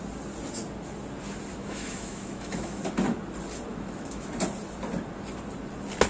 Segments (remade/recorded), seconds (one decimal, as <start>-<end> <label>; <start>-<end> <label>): 0.0-1.5 recorded; 1.5-2.8 remade; 2.8-3.7 recorded; 3.7-4.3 remade; 4.3-6.1 recorded